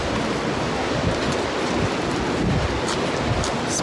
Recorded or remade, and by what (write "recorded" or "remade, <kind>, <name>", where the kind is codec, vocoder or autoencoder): recorded